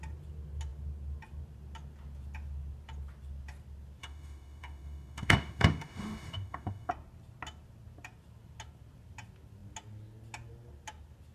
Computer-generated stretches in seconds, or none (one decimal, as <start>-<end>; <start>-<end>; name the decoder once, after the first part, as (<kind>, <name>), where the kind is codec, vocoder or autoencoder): 4.0-6.9 (autoencoder, DAC-VAE)